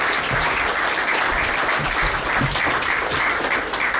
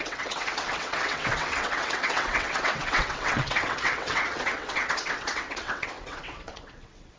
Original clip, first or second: first